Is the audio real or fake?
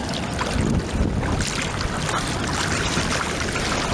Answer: real